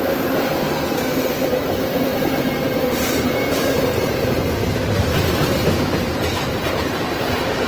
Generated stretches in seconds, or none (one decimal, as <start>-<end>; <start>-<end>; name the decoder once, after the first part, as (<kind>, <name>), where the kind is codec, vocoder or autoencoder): 0.0-0.5 (vocoder, BigVGAN v2); 1.2-7.7